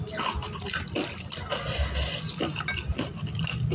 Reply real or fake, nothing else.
real